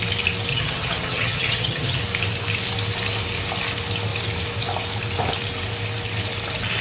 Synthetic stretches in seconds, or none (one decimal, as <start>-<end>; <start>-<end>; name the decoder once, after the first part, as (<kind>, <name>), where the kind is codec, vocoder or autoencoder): 0.5-2.0 (vocoder, HiFi-GAN)